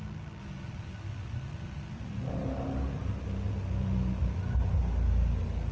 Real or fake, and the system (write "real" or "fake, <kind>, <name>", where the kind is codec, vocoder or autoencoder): real